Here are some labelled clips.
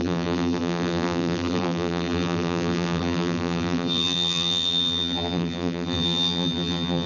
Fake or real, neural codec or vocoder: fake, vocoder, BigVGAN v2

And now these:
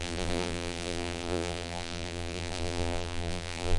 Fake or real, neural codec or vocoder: fake, vocoder, BigVGAN v2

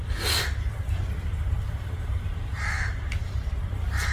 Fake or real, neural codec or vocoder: fake, vocoder, BigVGAN v2